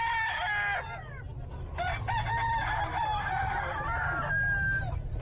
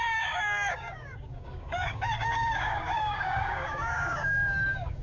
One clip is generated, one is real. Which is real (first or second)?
first